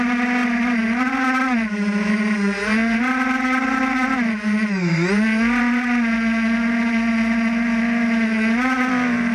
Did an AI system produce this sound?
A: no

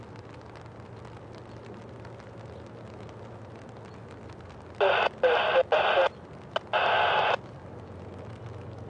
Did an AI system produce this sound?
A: no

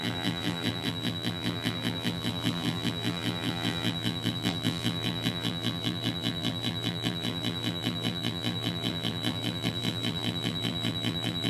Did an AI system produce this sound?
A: yes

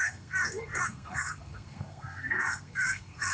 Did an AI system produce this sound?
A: yes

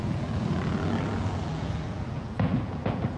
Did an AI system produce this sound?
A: yes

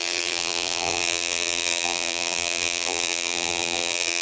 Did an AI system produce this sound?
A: yes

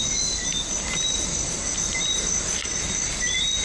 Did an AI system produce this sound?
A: no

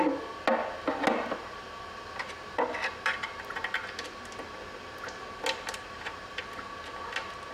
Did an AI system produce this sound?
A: no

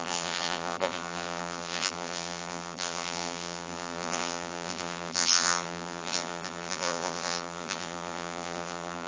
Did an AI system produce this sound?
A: yes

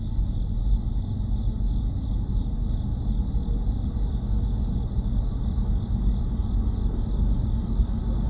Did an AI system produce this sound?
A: no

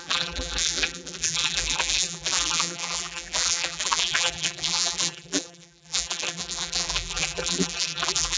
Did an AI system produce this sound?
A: yes